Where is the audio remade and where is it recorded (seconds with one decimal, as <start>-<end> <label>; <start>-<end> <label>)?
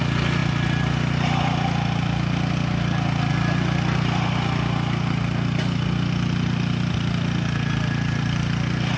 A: 0.0-9.0 recorded